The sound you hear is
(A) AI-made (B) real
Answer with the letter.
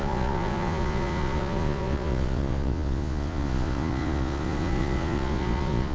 A